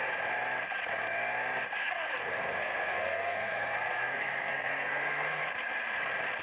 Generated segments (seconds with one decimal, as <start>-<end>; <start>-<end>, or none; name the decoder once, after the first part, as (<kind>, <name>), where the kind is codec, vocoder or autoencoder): 1.8-5.4 (codec, SNAC)